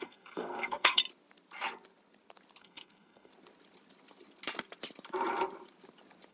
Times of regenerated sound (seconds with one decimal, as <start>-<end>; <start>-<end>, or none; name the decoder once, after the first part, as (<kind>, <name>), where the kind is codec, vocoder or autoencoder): 0.0-1.0 (codec, SNAC); 2.6-3.3